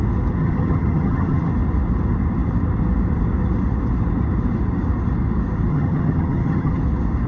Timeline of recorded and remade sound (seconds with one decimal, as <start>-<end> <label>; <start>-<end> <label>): 0.0-0.4 recorded; 0.4-1.5 remade; 1.5-5.7 recorded; 5.7-6.8 remade; 6.8-7.3 recorded